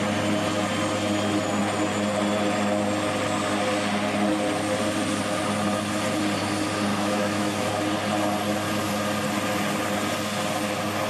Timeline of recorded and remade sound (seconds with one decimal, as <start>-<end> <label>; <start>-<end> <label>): 0.0-6.9 recorded; 6.9-7.7 remade; 7.7-11.1 recorded